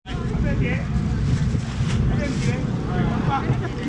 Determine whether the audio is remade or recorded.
recorded